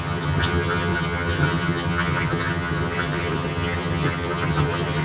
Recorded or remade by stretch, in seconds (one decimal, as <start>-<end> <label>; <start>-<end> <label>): 0.0-5.0 remade